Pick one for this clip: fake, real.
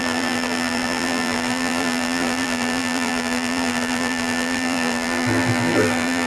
fake